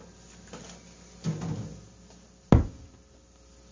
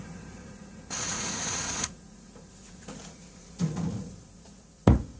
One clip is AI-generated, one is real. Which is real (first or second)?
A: first